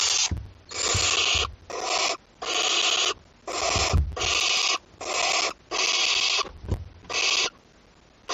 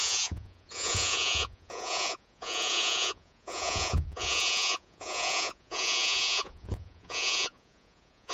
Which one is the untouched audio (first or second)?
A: first